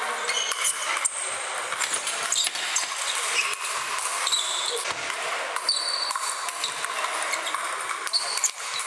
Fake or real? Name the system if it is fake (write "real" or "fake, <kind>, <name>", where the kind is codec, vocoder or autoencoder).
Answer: real